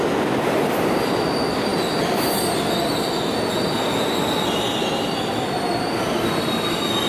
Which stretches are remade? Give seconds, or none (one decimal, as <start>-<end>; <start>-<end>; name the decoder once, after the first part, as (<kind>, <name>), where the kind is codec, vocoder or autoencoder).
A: none